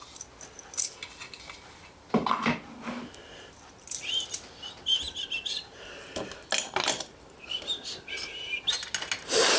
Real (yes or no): yes